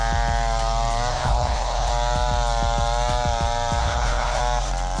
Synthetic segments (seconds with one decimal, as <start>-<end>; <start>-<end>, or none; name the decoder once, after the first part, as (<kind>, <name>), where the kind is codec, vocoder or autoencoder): 1.1-1.9 (codec, HILCodec); 3.8-4.4